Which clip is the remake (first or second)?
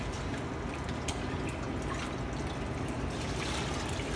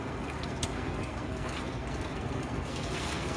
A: second